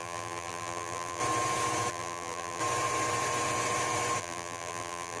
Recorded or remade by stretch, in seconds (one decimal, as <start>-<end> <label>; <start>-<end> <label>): 0.0-1.2 remade; 1.2-1.9 recorded; 1.9-2.6 remade; 2.6-4.2 recorded; 4.2-5.2 remade